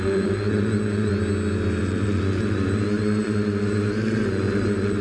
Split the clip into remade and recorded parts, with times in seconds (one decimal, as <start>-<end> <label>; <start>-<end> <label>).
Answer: 0.0-1.1 remade; 1.1-1.8 recorded; 1.8-5.0 remade